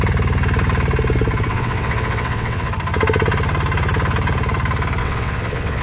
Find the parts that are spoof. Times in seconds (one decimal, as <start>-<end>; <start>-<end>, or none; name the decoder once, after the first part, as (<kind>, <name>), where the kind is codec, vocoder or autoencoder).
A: 1.5-2.7 (vocoder, WaveNeXt); 5.0-5.8